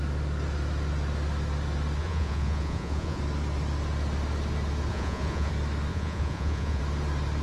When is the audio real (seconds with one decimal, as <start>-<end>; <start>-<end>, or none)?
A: 0.0-2.0; 3.2-4.9; 5.5-5.9; 6.8-7.4